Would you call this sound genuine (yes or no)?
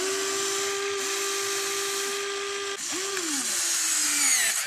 yes